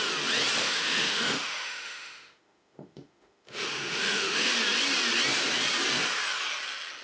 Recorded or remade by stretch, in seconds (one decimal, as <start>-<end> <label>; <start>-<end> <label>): 0.0-0.6 recorded; 0.6-4.5 remade; 4.5-7.0 recorded